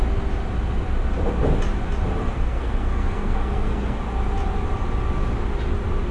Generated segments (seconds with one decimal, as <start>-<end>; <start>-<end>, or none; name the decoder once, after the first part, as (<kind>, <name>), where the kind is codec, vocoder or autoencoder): 2.2-4.0 (codec, SNAC)